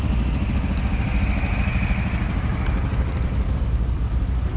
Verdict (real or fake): real